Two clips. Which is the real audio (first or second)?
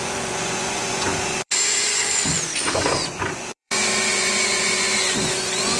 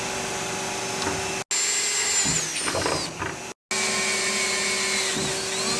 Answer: second